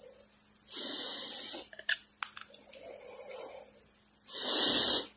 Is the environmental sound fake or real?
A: real